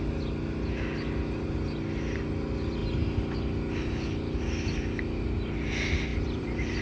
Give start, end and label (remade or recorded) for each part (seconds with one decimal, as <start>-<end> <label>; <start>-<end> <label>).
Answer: 0.0-6.1 recorded; 6.1-6.8 remade